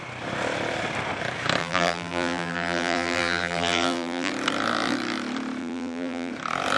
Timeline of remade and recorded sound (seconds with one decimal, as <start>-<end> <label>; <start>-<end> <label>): 0.0-1.6 recorded; 1.6-4.3 remade; 4.3-5.6 recorded; 5.6-6.3 remade; 6.3-6.8 recorded

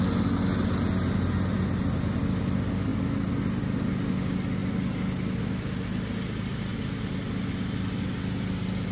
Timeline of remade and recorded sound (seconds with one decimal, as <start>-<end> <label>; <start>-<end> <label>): 0.0-8.9 recorded

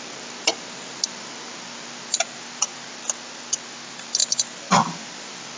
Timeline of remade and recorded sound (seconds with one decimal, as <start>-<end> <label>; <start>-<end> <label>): 0.0-5.6 recorded